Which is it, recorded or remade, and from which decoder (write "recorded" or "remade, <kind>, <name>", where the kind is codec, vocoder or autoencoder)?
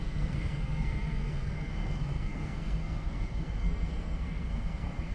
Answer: remade, codec, SNAC